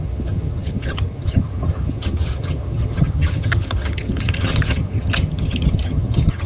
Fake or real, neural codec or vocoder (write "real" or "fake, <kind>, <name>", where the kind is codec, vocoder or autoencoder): fake, vocoder, HiFi-GAN